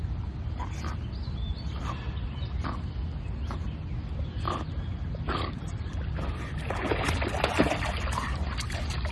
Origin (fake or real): real